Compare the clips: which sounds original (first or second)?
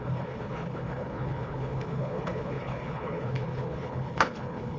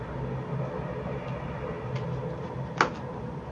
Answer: second